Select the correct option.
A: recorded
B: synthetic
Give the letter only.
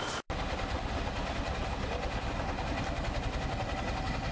A